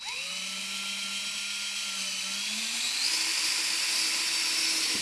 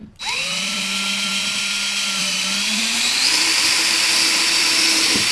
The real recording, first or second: first